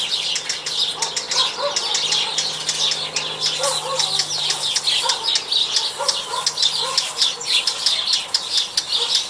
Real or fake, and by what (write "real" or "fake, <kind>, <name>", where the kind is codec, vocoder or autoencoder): real